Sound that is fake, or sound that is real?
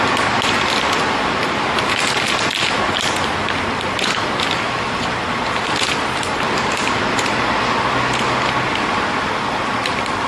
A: real